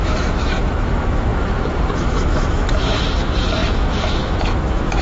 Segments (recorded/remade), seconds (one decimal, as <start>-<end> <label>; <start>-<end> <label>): 0.0-5.0 remade